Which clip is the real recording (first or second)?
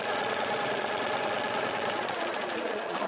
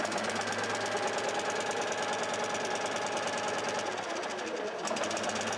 second